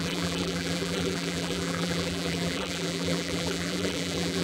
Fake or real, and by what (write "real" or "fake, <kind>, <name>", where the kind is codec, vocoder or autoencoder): fake, vocoder, BigVGAN v2